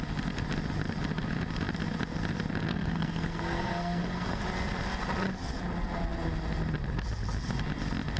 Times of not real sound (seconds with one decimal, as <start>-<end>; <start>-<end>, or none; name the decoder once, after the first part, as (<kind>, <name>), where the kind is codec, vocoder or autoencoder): 2.7-4.4 (codec, SNAC)